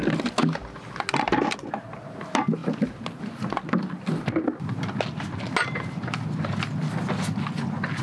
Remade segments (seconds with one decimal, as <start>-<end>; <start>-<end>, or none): none